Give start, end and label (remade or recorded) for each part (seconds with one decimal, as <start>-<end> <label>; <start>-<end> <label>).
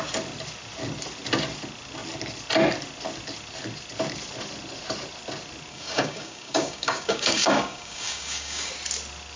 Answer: 0.0-5.7 recorded; 5.7-8.7 remade; 8.7-9.4 recorded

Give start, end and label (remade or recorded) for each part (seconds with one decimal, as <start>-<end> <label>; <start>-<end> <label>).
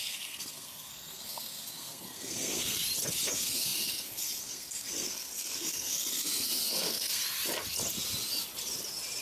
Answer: 0.0-2.8 remade; 2.8-3.3 recorded; 3.3-7.2 remade; 7.2-9.2 recorded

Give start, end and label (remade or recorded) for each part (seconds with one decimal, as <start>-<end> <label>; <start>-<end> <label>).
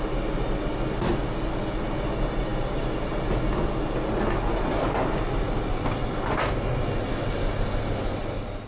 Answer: 0.0-8.7 recorded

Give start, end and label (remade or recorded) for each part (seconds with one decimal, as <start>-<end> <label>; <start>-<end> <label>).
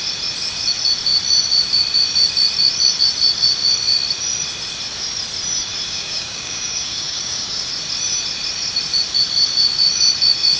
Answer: 0.0-5.7 recorded; 5.7-7.7 remade; 7.7-10.6 recorded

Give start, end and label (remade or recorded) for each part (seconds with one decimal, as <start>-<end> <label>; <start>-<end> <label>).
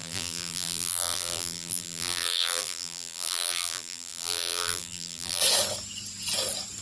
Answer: 0.0-5.4 remade; 5.4-6.8 recorded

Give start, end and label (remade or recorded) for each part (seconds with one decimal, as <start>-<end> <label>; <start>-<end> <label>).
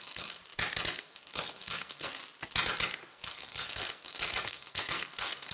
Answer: 0.0-0.4 remade; 0.4-1.0 recorded; 1.0-2.2 remade; 2.2-3.1 recorded; 3.1-5.5 remade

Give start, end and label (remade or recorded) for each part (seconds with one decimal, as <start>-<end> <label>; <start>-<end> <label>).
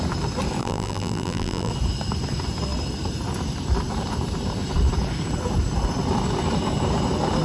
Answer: 0.0-0.6 recorded; 0.6-1.7 remade; 1.7-7.4 recorded